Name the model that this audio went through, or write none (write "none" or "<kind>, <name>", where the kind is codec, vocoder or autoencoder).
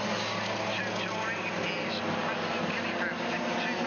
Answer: none